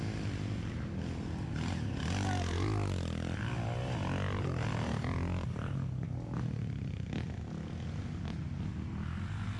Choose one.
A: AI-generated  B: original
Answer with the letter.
B